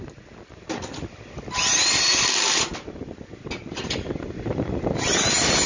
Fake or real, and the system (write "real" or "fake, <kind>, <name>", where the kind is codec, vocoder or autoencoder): real